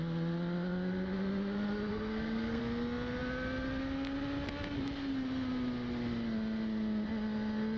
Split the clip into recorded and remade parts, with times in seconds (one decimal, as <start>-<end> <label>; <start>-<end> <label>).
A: 0.0-1.9 recorded; 1.9-2.6 remade; 2.6-7.8 recorded